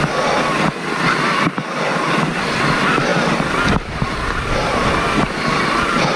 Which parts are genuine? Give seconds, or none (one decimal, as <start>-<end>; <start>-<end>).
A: 0.0-6.2